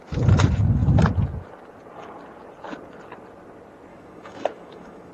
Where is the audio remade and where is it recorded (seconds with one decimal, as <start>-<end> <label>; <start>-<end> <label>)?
0.0-3.9 recorded; 3.9-5.1 remade